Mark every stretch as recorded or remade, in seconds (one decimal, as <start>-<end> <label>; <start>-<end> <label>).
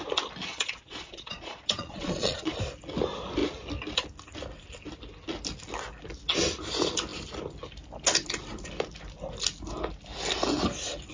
0.0-0.5 recorded; 0.5-2.5 remade; 2.5-11.1 recorded